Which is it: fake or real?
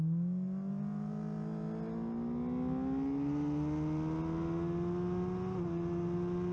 real